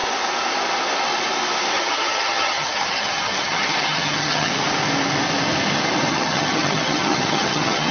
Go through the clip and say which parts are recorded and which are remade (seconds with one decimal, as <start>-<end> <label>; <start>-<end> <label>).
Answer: 0.0-1.7 recorded; 1.7-4.5 remade; 4.5-6.1 recorded; 6.1-7.9 remade

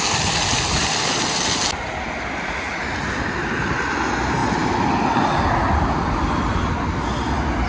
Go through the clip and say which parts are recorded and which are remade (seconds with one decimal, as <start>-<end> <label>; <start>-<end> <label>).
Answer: 0.0-7.7 recorded

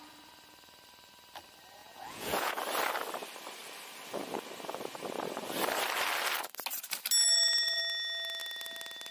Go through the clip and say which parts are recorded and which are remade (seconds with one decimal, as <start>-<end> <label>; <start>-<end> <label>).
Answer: 0.0-1.8 recorded; 1.8-2.6 remade; 2.6-7.2 recorded; 7.2-7.8 remade; 7.8-9.1 recorded

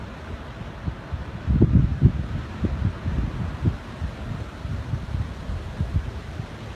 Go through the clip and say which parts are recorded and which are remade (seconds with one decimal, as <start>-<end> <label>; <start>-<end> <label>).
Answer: 0.0-6.7 recorded

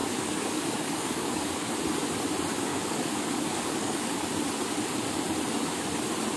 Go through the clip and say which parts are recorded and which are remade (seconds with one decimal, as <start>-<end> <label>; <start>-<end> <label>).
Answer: 0.0-1.7 remade; 1.7-2.7 recorded; 2.7-4.3 remade; 4.3-6.4 recorded

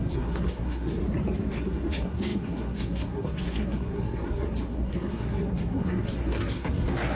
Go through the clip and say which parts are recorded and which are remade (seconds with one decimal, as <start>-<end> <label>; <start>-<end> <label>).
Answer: 0.0-1.0 remade; 1.0-1.5 recorded; 1.5-7.1 remade

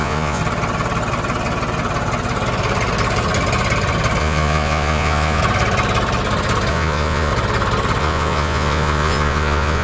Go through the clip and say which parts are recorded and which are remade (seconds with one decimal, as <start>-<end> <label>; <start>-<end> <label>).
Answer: 0.0-0.4 remade; 0.4-4.2 recorded; 4.2-5.4 remade; 5.4-6.7 recorded; 6.7-7.3 remade; 7.3-8.0 recorded; 8.0-9.8 remade